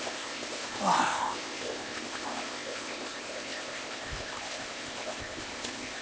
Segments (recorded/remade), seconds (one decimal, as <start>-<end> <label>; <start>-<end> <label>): 0.0-6.0 remade